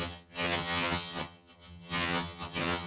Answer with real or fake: fake